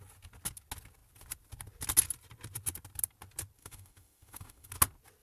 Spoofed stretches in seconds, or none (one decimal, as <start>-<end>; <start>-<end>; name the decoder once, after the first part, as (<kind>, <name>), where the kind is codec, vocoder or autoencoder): 3.6-4.7 (autoencoder, DAC-VAE)